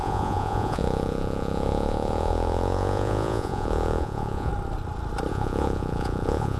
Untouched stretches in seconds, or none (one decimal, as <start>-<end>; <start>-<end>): 4.5-5.3